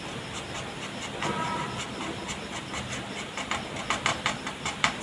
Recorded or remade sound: recorded